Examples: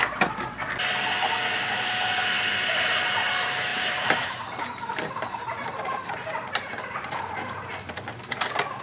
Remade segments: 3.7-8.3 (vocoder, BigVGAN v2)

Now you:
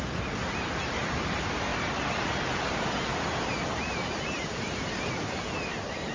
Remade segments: 1.7-2.3 (vocoder, BigVGAN v2); 4.0-4.8

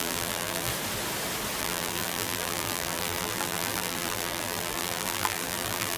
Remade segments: 0.0-0.7 (vocoder, BigVGAN v2); 1.6-6.0

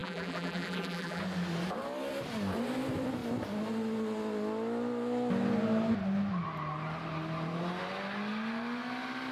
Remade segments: 0.0-1.2 (vocoder, BigVGAN v2)